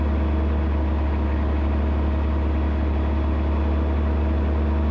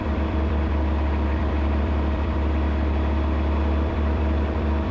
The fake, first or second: second